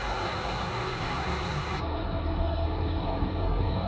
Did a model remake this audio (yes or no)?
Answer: yes